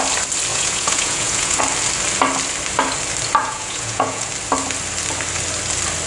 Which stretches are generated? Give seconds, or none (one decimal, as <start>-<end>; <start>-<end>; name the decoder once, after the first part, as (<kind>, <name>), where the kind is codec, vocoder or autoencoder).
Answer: 0.5-1.6 (vocoder, Vocos); 3.4-4.3